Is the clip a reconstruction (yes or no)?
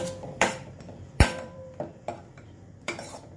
yes